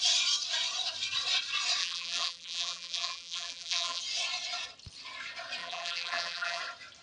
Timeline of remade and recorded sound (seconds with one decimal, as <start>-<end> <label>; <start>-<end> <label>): 0.0-1.8 recorded; 1.8-4.0 remade; 4.0-5.6 recorded; 5.6-6.6 remade; 6.6-7.0 recorded